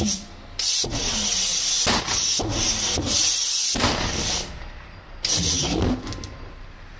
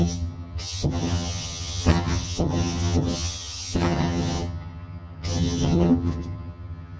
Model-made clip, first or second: second